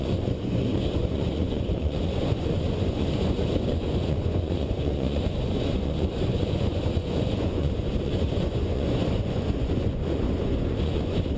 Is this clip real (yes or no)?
no